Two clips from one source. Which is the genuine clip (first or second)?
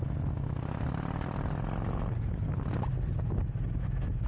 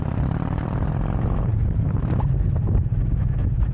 first